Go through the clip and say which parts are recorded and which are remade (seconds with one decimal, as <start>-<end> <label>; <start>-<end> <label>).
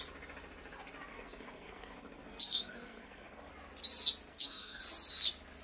0.0-1.1 recorded; 1.1-3.5 remade; 3.5-4.3 recorded; 4.3-4.8 remade; 4.8-5.6 recorded